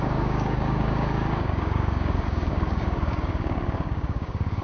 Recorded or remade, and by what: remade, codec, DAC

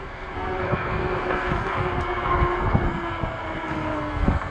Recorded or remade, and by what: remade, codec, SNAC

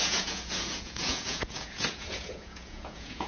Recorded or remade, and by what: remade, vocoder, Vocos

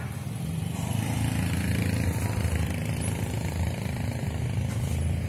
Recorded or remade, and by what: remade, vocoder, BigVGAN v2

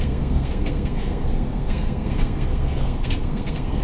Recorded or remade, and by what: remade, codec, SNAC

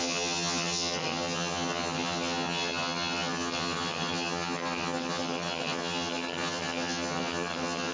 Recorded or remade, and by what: remade, vocoder, HiFi-GAN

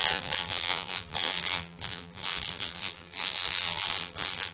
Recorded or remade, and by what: remade, vocoder, BigVGAN v2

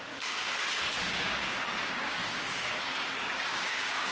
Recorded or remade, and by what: remade, codec, DAC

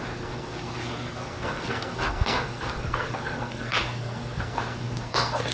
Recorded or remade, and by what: remade, codec, SNAC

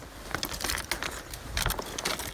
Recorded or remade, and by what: recorded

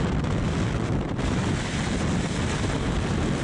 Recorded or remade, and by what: recorded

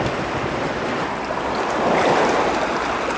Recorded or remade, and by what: recorded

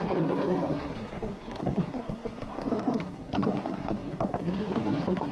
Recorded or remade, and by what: remade, codec, SNAC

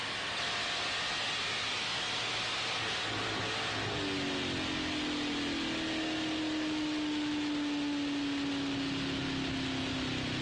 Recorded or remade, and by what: recorded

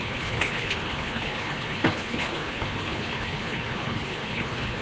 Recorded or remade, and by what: remade, codec, HILCodec